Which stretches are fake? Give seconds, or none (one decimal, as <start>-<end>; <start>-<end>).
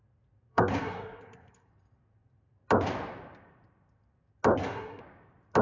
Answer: 0.5-1.7; 4.5-5.0